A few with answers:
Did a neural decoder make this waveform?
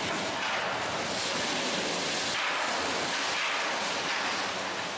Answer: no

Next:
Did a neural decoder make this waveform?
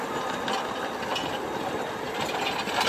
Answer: no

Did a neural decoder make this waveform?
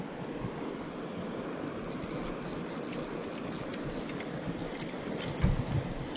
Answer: no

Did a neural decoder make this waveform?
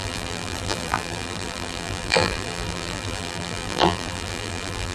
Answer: yes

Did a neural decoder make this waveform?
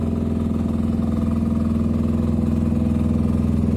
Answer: no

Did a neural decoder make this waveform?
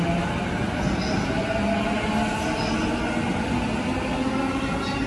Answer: no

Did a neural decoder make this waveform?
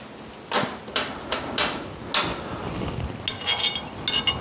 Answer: no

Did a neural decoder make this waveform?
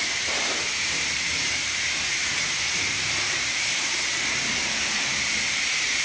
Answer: yes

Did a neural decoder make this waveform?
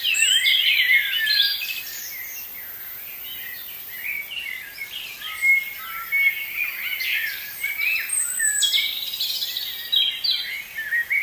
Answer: no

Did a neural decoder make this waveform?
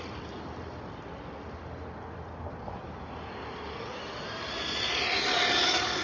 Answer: no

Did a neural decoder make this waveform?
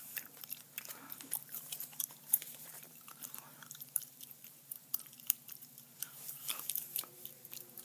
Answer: yes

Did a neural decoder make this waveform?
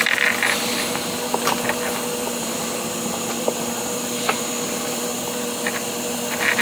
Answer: no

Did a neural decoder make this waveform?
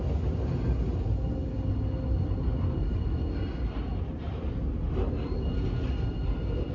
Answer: no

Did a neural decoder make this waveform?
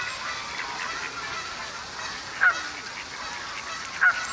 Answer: no